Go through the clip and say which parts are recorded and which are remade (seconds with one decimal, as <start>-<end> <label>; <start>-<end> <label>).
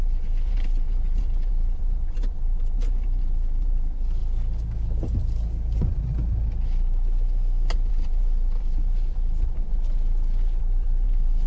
0.0-4.2 remade; 4.2-7.9 recorded; 7.9-9.7 remade; 9.7-10.6 recorded; 10.6-11.5 remade